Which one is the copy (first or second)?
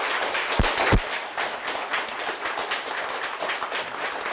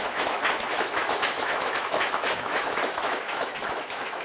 second